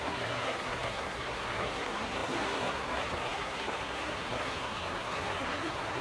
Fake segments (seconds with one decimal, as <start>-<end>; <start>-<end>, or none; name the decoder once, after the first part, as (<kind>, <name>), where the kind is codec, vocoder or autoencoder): 0.0-6.0 (codec, SNAC)

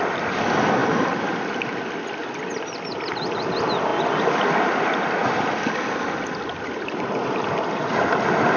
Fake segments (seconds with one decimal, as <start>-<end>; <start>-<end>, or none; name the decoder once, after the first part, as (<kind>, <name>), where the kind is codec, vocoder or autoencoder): none

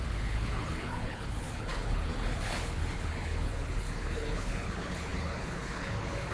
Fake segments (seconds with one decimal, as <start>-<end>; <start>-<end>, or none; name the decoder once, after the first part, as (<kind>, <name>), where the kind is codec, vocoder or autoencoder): 0.0-6.3 (codec, HILCodec)

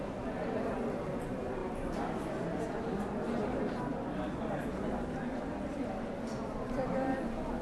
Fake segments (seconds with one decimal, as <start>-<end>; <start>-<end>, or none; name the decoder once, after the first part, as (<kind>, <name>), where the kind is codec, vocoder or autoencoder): none

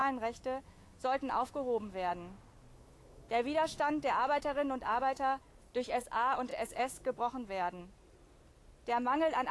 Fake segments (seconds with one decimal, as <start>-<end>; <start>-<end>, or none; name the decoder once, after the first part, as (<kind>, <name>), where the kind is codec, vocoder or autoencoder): 0.0-2.1 (autoencoder, DAC-VAE); 2.7-5.4; 6.5-7.8

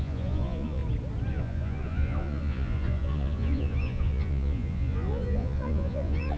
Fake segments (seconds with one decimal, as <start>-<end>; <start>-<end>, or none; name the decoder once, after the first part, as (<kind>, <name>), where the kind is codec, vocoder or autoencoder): 0.0-0.8 (vocoder, Vocos); 1.3-6.4

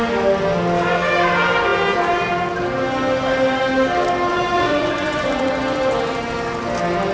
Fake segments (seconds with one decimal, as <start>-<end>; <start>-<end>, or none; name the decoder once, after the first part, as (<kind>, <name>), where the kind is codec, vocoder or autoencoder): 4.3-5.5 (vocoder, Vocos)